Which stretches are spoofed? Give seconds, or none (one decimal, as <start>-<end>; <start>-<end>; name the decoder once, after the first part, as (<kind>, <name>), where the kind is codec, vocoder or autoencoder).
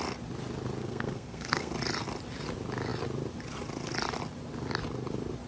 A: 0.8-1.7 (codec, SNAC)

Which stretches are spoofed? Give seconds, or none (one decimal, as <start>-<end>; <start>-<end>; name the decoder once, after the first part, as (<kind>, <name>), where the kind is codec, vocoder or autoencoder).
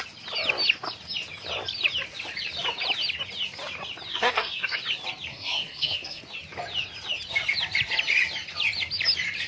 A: 4.1-4.8 (codec, SNAC); 5.3-6.2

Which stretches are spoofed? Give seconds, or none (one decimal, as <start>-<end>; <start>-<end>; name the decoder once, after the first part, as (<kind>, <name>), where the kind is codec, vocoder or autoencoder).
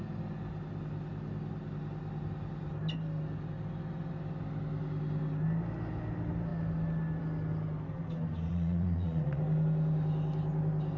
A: 8.5-9.4 (vocoder, Vocos)